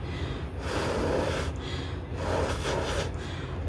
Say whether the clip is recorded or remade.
recorded